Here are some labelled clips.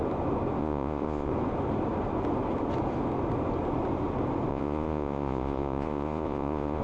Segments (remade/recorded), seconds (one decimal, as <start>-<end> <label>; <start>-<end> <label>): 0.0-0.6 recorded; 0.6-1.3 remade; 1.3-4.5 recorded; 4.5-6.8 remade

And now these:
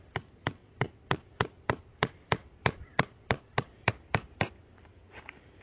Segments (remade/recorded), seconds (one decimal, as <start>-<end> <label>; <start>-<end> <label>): 0.0-0.6 recorded; 0.6-2.1 remade; 2.1-2.6 recorded; 2.6-3.9 remade; 3.9-5.6 recorded

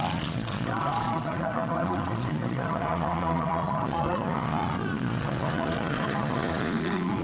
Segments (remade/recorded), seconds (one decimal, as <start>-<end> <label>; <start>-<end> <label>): 0.0-7.2 remade

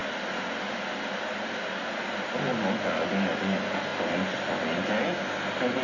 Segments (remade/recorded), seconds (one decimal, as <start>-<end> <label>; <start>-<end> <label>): 0.0-5.8 recorded

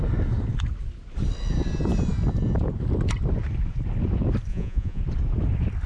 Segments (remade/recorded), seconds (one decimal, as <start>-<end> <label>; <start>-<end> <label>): 0.0-4.5 recorded; 4.5-5.0 remade; 5.0-5.9 recorded